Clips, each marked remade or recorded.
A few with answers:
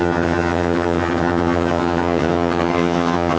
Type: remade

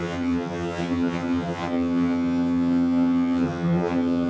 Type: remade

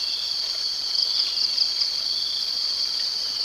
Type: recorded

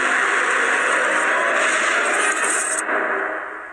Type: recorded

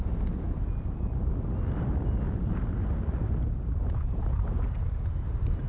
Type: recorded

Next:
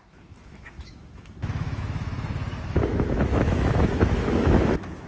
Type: remade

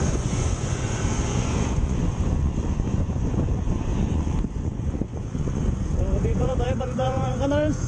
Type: remade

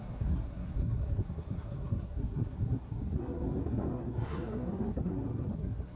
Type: remade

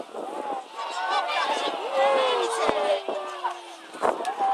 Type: recorded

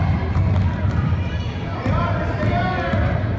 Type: recorded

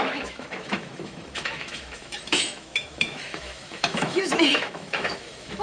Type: remade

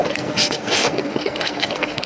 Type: remade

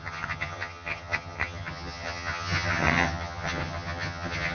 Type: remade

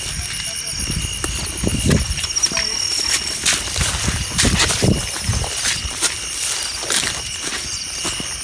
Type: recorded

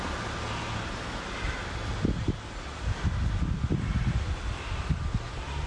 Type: recorded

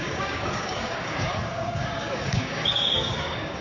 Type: remade